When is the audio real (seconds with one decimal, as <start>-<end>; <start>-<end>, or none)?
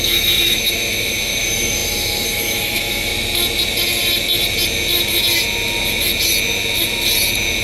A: 3.1-7.6